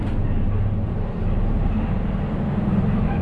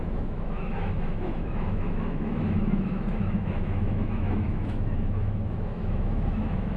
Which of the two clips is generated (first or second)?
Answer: second